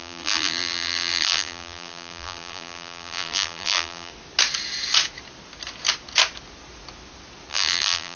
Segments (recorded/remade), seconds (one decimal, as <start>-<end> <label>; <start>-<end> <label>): 0.0-4.1 remade; 4.1-7.5 recorded; 7.5-8.2 remade